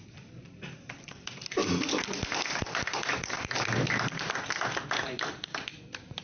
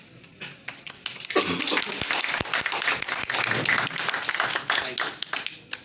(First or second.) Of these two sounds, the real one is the second